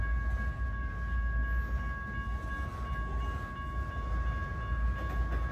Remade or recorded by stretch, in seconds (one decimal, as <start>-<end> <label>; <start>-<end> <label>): 0.0-5.5 recorded